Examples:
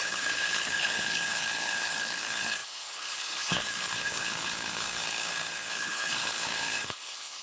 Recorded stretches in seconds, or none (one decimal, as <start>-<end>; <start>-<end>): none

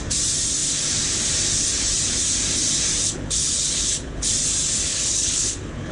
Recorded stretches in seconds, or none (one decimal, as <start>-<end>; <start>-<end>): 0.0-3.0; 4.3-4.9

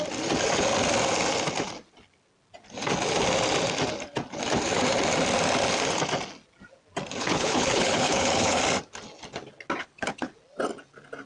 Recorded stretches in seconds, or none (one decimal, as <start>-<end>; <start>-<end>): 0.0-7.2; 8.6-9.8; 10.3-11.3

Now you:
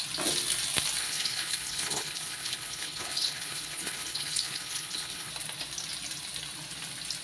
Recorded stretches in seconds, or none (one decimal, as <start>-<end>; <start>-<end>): 0.0-1.0; 5.3-7.2

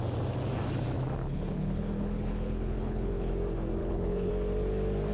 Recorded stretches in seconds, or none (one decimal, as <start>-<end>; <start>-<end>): 0.0-1.2; 3.3-3.8; 4.3-5.1

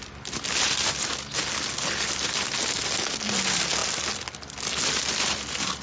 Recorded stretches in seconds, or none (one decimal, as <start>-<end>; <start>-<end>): 0.0-5.8

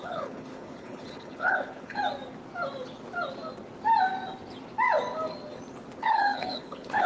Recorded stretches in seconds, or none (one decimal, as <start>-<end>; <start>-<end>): 2.0-6.0